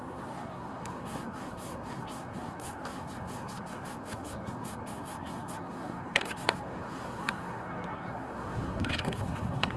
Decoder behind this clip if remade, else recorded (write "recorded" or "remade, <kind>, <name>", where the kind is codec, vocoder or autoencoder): remade, codec, SNAC